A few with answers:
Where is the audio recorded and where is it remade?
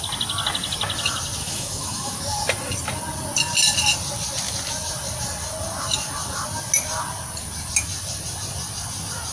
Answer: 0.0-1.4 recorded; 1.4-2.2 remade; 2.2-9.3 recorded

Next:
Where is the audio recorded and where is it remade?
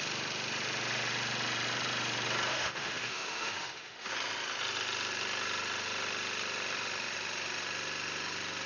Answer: 0.0-2.5 recorded; 2.5-4.1 remade; 4.1-8.7 recorded